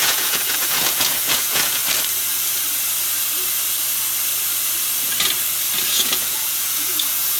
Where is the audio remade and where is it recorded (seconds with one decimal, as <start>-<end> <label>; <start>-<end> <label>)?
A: 0.0-1.8 remade; 1.8-5.9 recorded; 5.9-7.4 remade